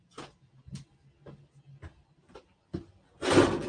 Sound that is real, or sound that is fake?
real